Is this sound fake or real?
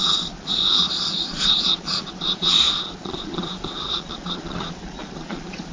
fake